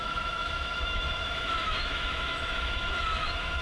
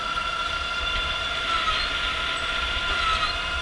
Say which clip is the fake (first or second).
first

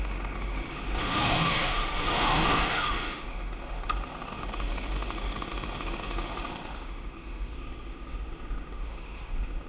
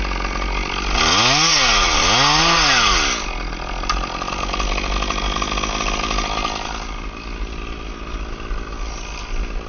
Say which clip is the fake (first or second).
first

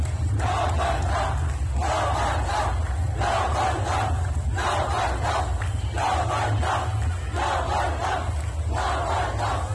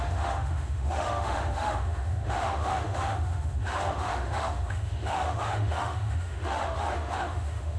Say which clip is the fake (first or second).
second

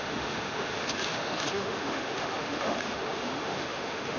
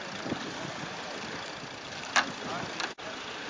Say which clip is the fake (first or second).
first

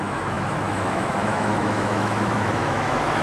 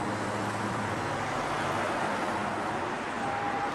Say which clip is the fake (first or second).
first